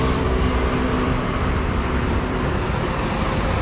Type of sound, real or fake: fake